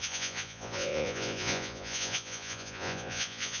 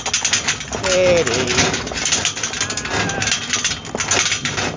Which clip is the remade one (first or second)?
first